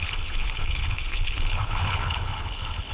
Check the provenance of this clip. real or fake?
fake